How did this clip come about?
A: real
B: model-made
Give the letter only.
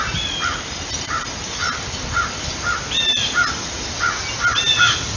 A